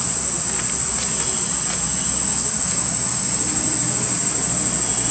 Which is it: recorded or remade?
recorded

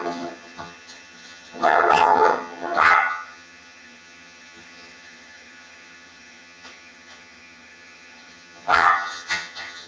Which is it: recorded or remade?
remade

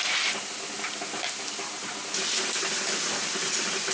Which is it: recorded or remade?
recorded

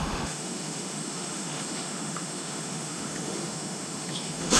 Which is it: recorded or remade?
remade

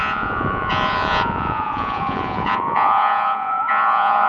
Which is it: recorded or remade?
remade